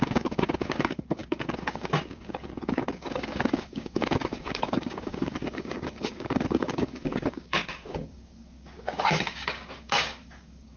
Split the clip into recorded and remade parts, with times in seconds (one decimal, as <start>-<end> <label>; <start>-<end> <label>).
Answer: 0.0-10.8 remade